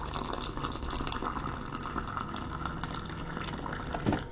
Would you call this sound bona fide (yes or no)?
yes